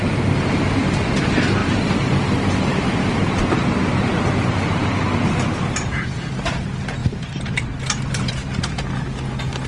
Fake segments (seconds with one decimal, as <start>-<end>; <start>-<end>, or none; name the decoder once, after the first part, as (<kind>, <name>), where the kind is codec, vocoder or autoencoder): 1.6-3.3 (vocoder, BigVGAN v2); 4.8-6.3; 7.0-8.3